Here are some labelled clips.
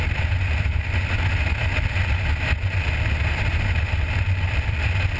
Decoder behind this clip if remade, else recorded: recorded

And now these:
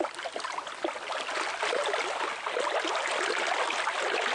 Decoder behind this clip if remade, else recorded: recorded